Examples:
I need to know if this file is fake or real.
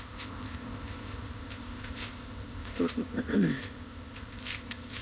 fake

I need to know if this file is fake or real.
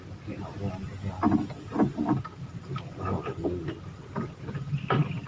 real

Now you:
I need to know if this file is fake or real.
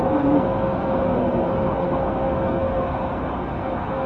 fake